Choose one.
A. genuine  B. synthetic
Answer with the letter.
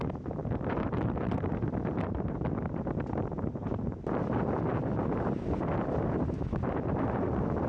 B